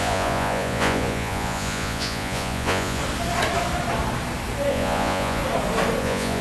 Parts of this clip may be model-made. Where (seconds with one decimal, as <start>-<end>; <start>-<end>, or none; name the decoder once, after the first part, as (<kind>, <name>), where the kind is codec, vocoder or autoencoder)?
0.0-3.0 (vocoder, Vocos); 4.7-5.4; 6.0-6.4